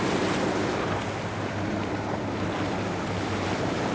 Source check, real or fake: real